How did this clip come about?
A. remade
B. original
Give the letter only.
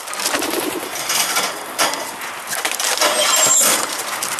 B